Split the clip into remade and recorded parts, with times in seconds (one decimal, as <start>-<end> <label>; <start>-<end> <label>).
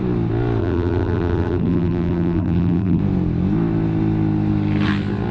0.0-0.6 recorded; 0.6-3.0 remade; 3.0-5.3 recorded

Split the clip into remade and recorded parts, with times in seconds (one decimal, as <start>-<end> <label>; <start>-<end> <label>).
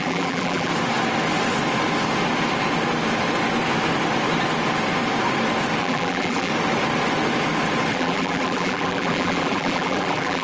0.0-0.7 remade; 0.7-5.8 recorded; 5.8-6.5 remade; 6.5-7.9 recorded; 7.9-10.4 remade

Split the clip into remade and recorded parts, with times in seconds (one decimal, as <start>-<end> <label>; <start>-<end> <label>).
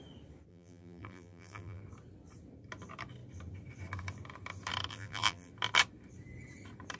0.0-0.5 recorded; 0.5-1.8 remade; 1.8-4.9 recorded; 4.9-5.5 remade; 5.5-7.0 recorded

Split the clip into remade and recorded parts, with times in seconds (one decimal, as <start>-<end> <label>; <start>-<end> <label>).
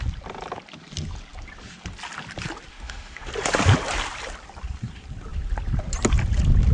0.0-2.7 recorded; 2.7-3.3 remade; 3.3-6.7 recorded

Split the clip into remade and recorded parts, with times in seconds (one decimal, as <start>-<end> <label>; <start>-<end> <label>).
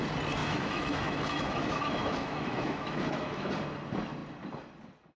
0.0-0.4 recorded; 0.4-3.5 remade; 3.5-5.2 recorded